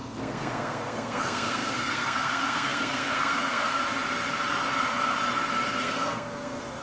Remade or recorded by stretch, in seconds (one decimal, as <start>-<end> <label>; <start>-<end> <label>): 0.0-3.8 remade; 3.8-5.8 recorded; 5.8-6.8 remade